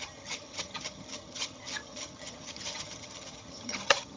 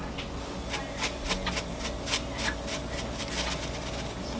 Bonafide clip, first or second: second